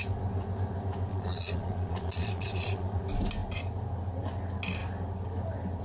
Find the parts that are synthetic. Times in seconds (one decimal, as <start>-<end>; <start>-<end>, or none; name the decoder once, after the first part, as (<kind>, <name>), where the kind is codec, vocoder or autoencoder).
1.1-3.0 (vocoder, Vocos)